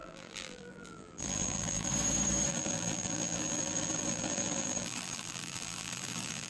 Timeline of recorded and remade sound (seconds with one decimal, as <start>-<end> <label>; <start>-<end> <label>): 0.0-1.9 remade; 1.9-2.5 recorded; 2.5-6.5 remade